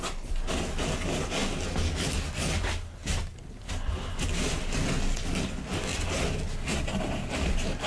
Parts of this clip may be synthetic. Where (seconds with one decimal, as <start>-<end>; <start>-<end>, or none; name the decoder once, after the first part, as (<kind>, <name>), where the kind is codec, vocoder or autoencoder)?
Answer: 3.0-3.6 (vocoder, BigVGAN v2)